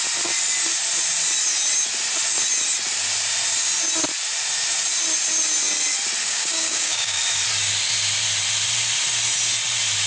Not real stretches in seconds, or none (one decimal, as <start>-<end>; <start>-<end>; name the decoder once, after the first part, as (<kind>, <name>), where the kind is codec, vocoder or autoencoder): 6.2-7.2 (codec, DAC)